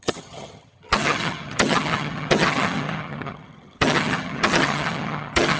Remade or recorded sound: remade